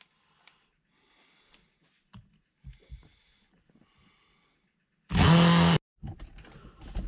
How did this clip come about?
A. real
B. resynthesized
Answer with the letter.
A